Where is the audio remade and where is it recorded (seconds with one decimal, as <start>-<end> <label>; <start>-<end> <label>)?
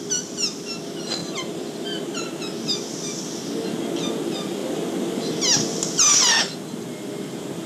0.0-1.2 recorded; 1.2-2.4 remade; 2.4-7.7 recorded